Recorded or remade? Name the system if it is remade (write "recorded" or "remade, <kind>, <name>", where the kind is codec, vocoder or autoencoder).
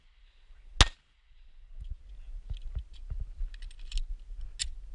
recorded